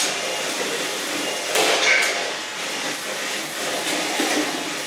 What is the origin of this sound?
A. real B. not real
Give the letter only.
A